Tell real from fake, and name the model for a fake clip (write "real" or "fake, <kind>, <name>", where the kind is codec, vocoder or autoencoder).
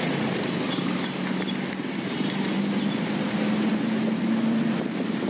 real